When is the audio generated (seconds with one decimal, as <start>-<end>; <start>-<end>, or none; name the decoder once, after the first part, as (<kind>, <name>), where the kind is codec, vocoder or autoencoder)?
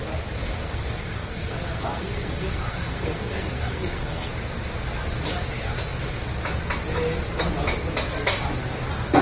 0.5-4.3 (codec, SNAC)